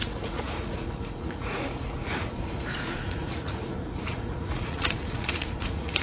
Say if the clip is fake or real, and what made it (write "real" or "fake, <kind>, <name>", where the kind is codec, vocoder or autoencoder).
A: fake, vocoder, Vocos